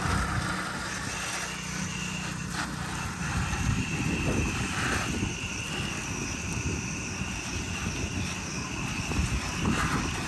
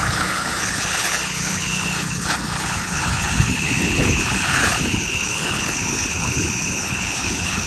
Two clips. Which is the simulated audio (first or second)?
second